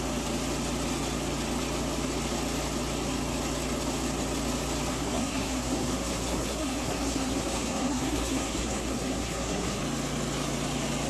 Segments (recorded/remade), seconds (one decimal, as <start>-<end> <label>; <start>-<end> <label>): 0.0-4.9 recorded; 4.9-9.8 remade; 9.8-11.1 recorded